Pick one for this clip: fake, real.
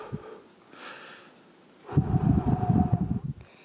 real